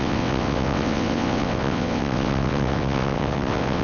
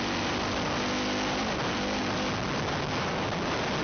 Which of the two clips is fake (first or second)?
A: first